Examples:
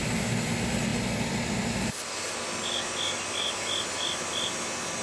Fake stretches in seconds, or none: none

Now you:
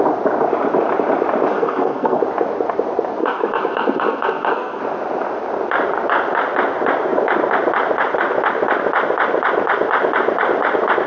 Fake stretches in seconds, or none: 1.5-2.2 (codec, SNAC); 3.2-4.8

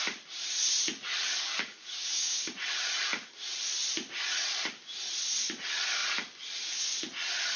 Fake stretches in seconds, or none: 1.2-2.5 (codec, DAC)

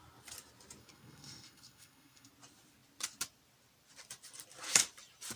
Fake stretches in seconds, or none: 0.8-2.3 (codec, SNAC)

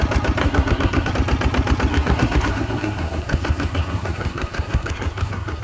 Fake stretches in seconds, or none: 0.4-1.1 (codec, SNAC); 1.9-5.6